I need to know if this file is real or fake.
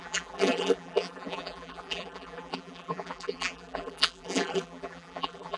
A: fake